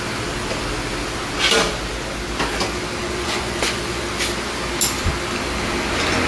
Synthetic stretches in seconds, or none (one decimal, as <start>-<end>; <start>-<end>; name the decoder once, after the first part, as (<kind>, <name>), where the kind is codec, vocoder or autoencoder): 3.0-4.0 (vocoder, Vocos)